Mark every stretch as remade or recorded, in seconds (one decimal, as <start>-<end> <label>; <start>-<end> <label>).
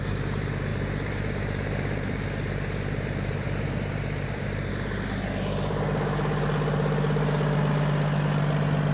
0.0-0.7 recorded; 0.7-4.7 remade; 4.7-8.9 recorded